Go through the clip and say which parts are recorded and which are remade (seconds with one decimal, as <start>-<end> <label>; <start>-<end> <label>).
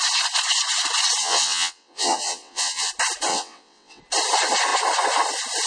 0.0-1.2 recorded; 1.2-2.9 remade; 2.9-3.3 recorded; 3.3-4.0 remade; 4.0-5.7 recorded